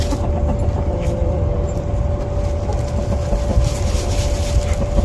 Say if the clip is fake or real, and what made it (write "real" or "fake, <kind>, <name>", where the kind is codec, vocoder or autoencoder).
real